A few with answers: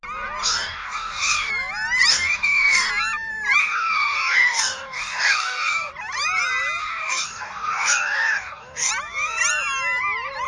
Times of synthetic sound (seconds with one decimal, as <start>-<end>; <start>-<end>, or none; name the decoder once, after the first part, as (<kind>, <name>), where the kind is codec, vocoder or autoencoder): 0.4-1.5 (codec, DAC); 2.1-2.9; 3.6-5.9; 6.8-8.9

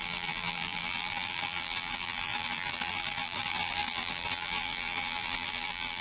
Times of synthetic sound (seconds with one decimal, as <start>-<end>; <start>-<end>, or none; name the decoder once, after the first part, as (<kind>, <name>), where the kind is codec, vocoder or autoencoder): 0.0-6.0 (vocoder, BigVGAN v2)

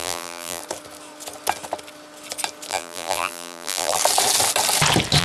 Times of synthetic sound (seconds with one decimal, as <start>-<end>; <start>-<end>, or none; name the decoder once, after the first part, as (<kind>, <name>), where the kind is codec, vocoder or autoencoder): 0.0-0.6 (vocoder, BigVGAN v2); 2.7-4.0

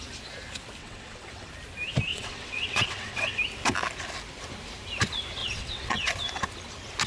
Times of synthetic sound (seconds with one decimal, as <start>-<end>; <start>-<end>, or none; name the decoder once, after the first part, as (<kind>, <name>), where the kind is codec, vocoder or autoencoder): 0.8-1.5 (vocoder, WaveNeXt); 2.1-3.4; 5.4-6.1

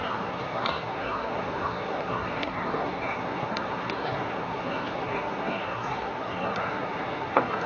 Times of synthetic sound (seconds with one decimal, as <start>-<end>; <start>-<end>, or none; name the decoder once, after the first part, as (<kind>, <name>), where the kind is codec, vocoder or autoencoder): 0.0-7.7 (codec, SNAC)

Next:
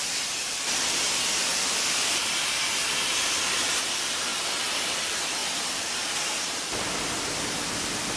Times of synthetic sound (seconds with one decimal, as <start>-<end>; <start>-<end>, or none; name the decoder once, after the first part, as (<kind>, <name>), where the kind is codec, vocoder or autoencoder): 0.0-4.3 (vocoder, BigVGAN v2); 4.9-8.2

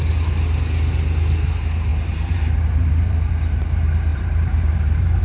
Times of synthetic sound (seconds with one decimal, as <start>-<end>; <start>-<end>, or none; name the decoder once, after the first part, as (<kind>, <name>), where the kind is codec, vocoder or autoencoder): 1.9-3.3 (vocoder, BigVGAN v2); 4.1-5.2

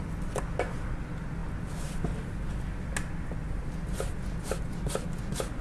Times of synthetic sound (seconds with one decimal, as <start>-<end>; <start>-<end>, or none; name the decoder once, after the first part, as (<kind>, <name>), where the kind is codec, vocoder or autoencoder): none